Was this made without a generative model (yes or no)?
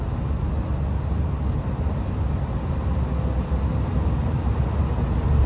yes